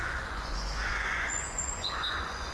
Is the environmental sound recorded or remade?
remade